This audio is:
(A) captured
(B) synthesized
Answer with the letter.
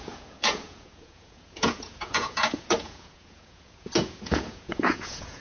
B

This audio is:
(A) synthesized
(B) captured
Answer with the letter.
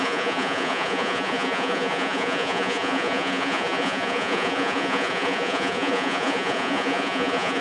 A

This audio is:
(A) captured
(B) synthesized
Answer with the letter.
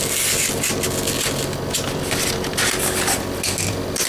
A